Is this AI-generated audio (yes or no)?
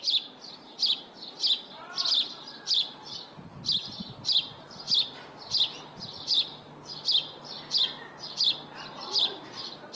no